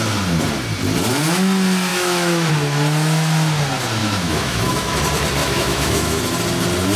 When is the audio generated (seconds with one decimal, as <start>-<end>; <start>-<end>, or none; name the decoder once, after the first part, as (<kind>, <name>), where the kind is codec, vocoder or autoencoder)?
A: 1.9-2.5 (autoencoder, DAC-VAE); 4.0-5.0; 5.4-6.2

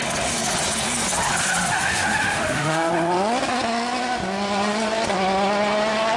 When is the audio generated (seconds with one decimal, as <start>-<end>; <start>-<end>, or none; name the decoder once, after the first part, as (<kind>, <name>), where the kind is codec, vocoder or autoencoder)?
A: 1.7-2.9 (autoencoder, DAC-VAE)